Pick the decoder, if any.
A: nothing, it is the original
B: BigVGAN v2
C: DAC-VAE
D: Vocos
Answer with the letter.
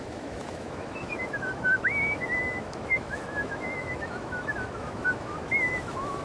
C